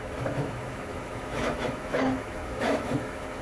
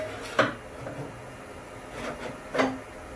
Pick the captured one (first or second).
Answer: second